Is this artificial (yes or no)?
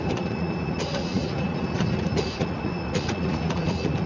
yes